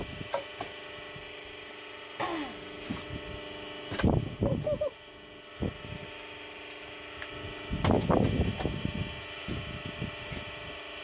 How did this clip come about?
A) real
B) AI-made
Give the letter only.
A